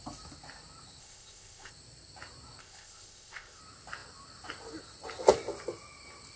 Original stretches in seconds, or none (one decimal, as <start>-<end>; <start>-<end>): 0.0-1.0; 1.7-2.6; 3.6-6.4